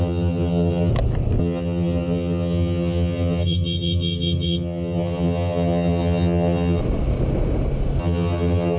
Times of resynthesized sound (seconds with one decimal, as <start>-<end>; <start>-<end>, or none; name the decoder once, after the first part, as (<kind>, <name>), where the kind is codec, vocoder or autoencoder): 0.0-0.9 (vocoder, HiFi-GAN); 1.4-6.8; 8.0-8.8

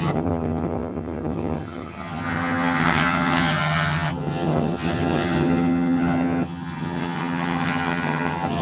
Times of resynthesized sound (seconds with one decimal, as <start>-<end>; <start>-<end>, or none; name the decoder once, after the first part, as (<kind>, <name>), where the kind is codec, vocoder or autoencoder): 0.0-8.6 (vocoder, HiFi-GAN)